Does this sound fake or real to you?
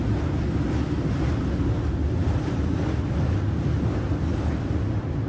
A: real